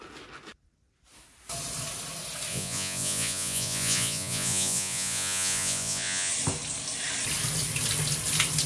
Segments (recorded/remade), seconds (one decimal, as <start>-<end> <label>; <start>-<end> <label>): 0.0-2.5 recorded; 2.5-6.3 remade; 6.3-8.7 recorded